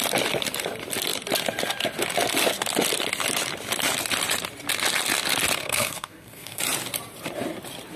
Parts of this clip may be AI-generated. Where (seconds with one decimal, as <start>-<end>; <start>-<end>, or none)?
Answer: 5.6-6.6